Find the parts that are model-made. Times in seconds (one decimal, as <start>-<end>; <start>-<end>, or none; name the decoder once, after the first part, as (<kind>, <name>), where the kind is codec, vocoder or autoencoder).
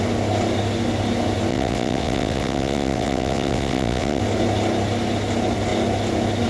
1.5-4.2 (vocoder, WaveNeXt)